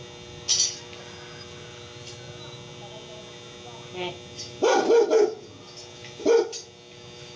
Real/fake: real